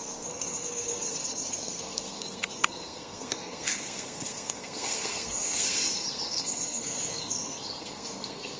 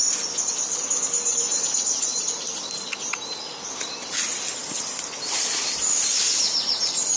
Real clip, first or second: second